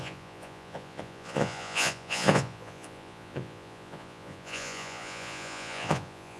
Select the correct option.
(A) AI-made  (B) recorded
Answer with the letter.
A